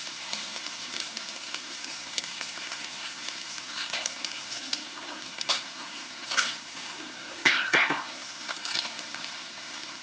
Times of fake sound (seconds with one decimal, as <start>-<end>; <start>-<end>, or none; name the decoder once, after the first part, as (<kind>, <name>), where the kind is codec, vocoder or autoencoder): 0.0-10.0 (codec, SNAC)